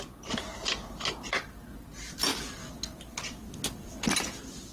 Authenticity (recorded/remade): recorded